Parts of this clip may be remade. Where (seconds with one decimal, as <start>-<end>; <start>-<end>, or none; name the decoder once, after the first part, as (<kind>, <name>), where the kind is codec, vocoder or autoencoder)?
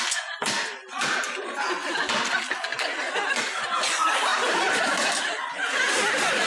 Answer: 4.3-5.2 (vocoder, BigVGAN v2)